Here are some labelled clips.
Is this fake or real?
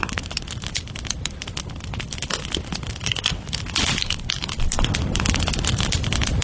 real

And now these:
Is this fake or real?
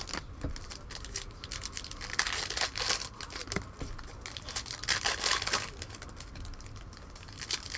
real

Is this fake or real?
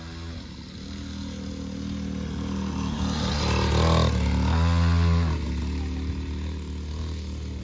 real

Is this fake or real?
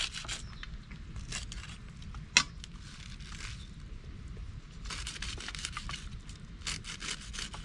real